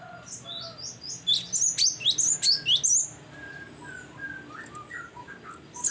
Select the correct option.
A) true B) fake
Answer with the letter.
A